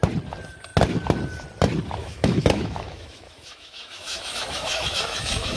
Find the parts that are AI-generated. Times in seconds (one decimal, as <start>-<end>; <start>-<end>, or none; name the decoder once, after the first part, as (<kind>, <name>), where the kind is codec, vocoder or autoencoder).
2.0-5.6 (autoencoder, DAC-VAE)